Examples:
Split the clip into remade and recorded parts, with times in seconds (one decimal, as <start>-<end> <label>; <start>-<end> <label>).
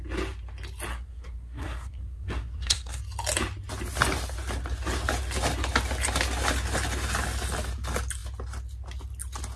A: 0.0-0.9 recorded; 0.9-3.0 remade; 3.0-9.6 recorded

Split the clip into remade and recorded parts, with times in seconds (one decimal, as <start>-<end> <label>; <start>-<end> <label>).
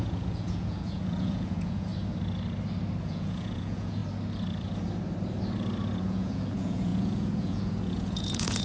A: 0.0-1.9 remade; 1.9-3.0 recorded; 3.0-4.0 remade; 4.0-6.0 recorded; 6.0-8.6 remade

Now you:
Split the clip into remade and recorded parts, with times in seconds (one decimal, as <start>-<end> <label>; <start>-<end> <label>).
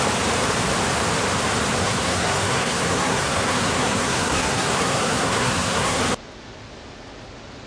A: 0.0-1.8 recorded; 1.8-6.0 remade; 6.0-7.7 recorded